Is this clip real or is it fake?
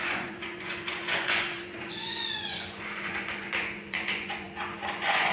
fake